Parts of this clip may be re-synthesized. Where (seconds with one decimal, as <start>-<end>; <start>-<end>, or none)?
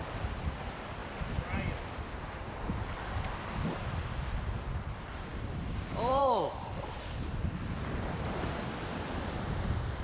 0.0-1.0; 3.2-10.0